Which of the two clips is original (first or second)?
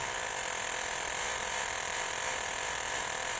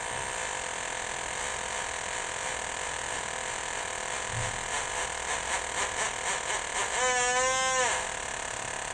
second